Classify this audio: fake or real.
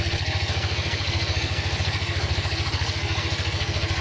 fake